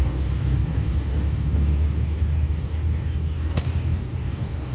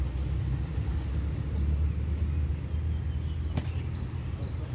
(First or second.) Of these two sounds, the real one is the second